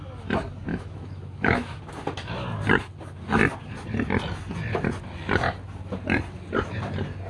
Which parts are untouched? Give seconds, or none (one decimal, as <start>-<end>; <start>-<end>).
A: 0.0-0.7; 1.8-7.3